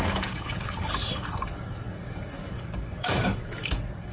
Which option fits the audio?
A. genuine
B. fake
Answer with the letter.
B